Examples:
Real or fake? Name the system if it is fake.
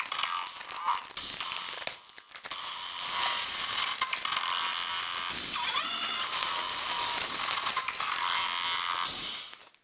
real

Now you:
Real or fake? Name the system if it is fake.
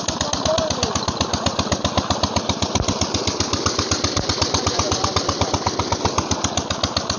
real